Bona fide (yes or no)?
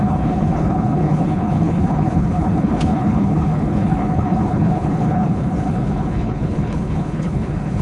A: no